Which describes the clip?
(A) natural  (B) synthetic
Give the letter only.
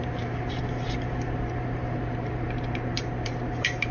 B